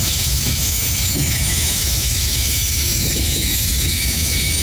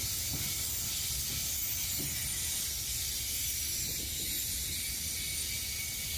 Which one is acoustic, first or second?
second